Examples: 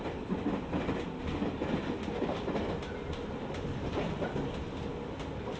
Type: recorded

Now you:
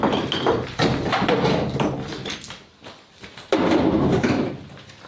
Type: recorded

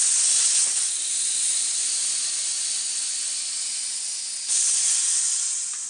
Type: recorded